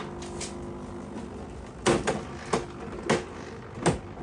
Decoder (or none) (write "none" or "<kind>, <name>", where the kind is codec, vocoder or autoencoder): none